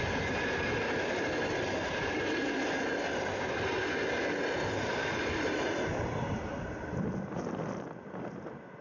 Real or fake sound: real